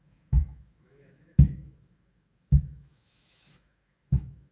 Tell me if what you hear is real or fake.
fake